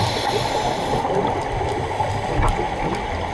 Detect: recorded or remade recorded